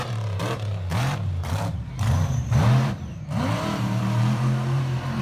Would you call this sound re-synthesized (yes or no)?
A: yes